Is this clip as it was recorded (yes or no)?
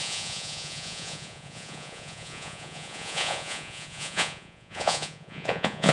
no